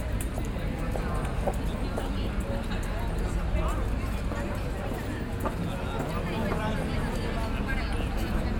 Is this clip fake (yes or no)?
no